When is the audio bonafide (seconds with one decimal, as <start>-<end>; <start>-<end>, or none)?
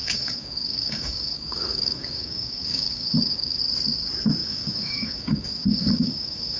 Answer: 3.6-4.4